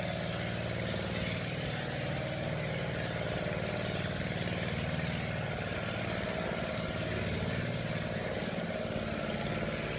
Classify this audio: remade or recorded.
recorded